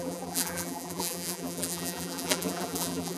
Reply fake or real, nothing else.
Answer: fake